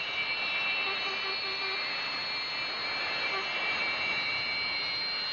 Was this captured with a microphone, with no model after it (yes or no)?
yes